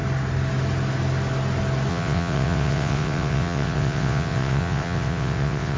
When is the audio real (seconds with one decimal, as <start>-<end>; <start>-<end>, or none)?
0.0-1.9